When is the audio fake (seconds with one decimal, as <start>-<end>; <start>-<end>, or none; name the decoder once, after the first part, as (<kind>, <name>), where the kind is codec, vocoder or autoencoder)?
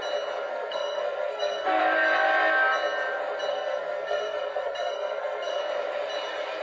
0.5-1.8 (codec, SNAC); 3.5-5.6